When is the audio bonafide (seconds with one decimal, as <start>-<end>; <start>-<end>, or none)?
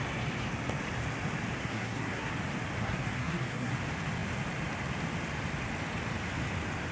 0.0-1.6; 2.3-2.8; 3.7-6.9